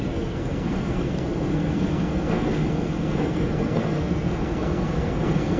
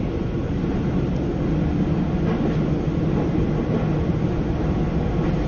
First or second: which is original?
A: second